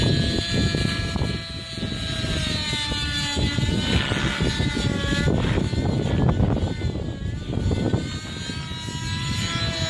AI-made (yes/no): no